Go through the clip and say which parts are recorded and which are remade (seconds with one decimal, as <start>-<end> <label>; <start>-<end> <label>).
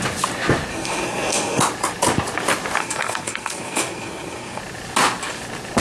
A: 0.0-0.7 recorded; 0.7-1.6 remade; 1.6-2.8 recorded; 2.8-4.6 remade; 4.6-5.8 recorded